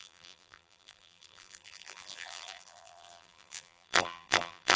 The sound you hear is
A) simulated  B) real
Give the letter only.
A